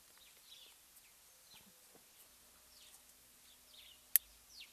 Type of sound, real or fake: real